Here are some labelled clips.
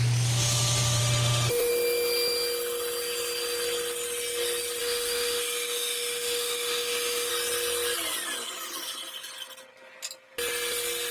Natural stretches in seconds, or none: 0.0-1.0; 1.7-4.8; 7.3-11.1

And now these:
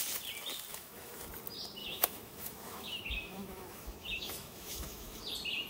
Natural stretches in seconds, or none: 0.0-0.7; 1.3-1.8; 5.2-5.7